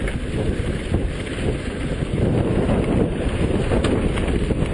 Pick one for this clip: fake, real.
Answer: real